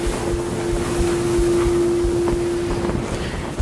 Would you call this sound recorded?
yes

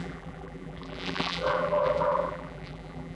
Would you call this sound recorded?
no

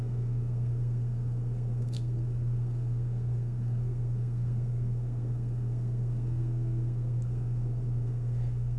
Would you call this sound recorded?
no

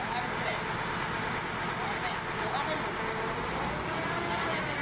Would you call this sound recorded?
yes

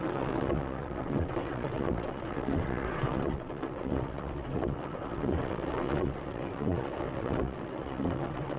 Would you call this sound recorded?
no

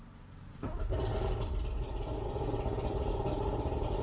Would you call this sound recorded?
no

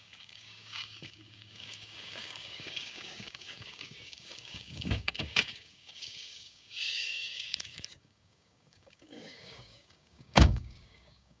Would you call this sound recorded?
no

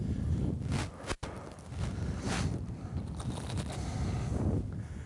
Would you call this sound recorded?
yes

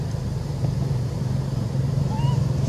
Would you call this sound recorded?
no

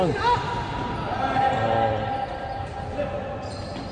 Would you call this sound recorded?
yes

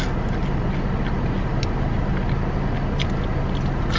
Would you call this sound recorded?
yes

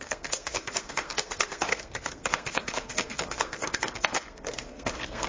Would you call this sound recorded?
no